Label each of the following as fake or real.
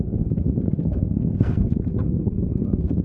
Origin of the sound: fake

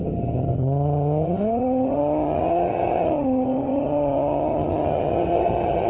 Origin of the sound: fake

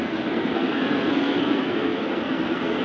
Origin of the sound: fake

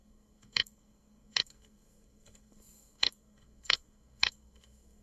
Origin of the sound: fake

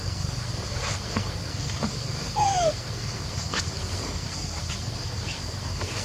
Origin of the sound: fake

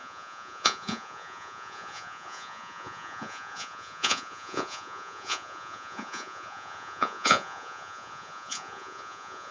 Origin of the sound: fake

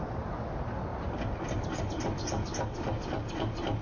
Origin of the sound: real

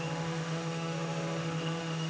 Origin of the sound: fake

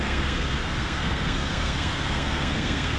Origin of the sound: fake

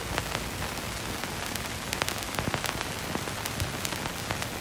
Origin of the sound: real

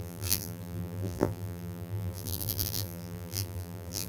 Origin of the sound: fake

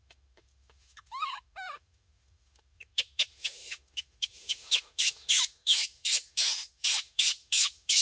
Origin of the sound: fake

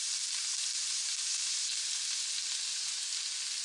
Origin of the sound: real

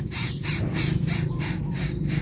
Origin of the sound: fake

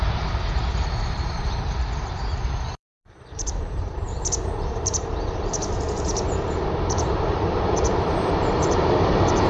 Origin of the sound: fake